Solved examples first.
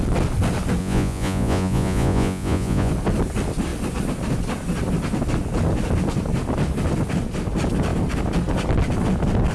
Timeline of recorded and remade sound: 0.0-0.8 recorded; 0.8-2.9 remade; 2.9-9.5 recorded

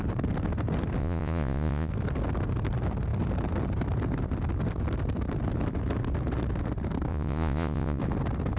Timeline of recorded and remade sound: 0.0-1.0 recorded; 1.0-1.9 remade; 1.9-7.1 recorded; 7.1-8.0 remade; 8.0-8.6 recorded

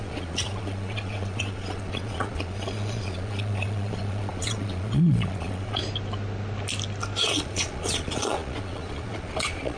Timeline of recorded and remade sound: 0.0-5.8 remade; 5.8-7.3 recorded; 7.3-9.8 remade

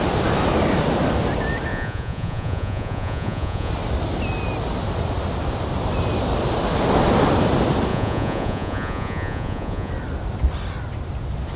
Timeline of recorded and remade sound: 0.0-1.7 recorded; 1.7-3.7 remade; 3.7-7.9 recorded; 7.9-9.9 remade; 9.9-11.6 recorded

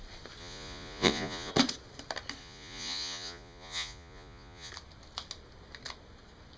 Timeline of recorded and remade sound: 0.0-0.4 recorded; 0.4-1.5 remade; 1.5-2.4 recorded; 2.4-4.7 remade; 4.7-6.6 recorded

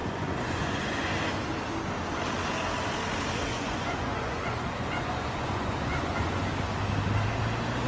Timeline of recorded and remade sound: 0.0-1.1 remade; 1.1-3.5 recorded; 3.5-6.5 remade; 6.5-7.9 recorded